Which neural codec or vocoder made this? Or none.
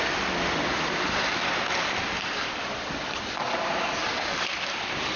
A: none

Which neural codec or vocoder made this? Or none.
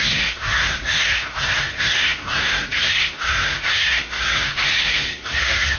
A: codec, SNAC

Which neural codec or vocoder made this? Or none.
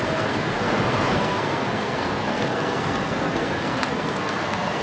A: codec, SNAC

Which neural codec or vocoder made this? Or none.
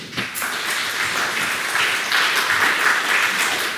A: none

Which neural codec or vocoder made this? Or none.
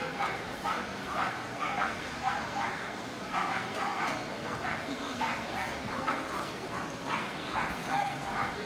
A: codec, SNAC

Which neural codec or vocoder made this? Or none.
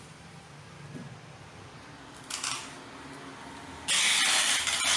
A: none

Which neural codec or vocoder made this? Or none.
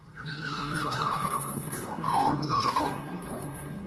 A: codec, SNAC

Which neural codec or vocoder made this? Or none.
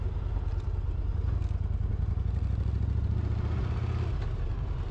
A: none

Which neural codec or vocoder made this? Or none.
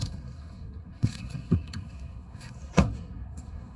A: codec, SNAC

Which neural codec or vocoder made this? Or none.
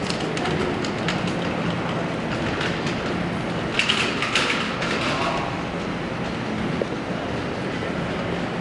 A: none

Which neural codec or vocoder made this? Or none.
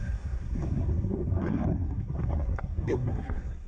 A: codec, SNAC